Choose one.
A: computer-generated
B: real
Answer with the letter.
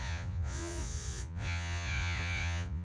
A